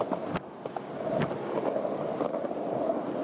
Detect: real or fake real